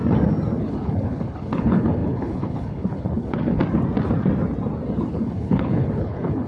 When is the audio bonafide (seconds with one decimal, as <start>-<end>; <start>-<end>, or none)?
0.0-0.6; 3.6-5.1